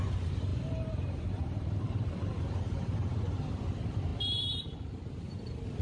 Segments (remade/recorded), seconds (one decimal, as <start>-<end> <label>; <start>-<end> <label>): 0.0-0.5 recorded; 0.5-3.5 remade; 3.5-5.8 recorded

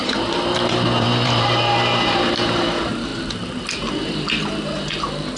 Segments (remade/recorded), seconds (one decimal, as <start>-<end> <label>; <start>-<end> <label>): 0.0-3.1 remade; 3.1-3.9 recorded; 3.9-5.4 remade

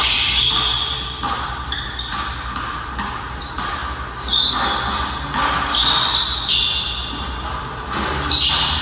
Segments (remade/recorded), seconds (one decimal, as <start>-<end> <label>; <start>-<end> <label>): 0.0-3.8 remade; 3.8-6.6 recorded; 6.6-8.8 remade

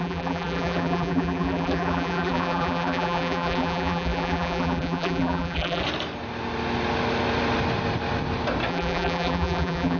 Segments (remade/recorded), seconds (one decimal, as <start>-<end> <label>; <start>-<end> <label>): 0.0-5.8 remade; 5.8-8.7 recorded; 8.7-10.0 remade

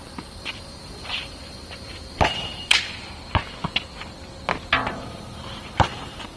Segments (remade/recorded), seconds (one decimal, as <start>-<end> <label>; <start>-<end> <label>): 0.0-2.7 remade; 2.7-4.9 recorded; 4.9-6.4 remade